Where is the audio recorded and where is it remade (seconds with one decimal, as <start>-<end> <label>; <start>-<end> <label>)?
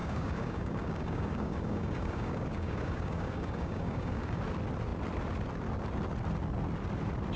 0.0-4.4 remade; 4.4-7.4 recorded